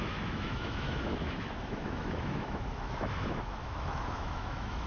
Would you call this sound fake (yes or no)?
yes